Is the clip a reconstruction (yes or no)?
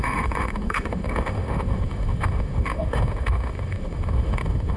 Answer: yes